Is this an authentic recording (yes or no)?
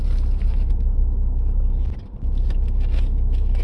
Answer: yes